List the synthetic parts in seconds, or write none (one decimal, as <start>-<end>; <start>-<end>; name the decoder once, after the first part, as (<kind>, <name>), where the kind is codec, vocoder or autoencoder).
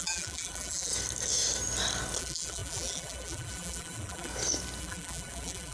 0.0-0.9 (vocoder, BigVGAN v2); 2.2-4.3; 4.8-5.7